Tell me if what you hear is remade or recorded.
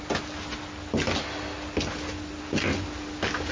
recorded